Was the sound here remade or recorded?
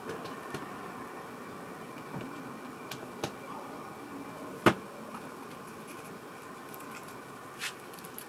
recorded